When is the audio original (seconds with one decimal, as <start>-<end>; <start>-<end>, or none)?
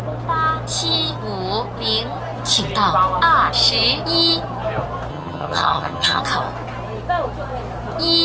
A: 0.0-5.1; 6.2-8.2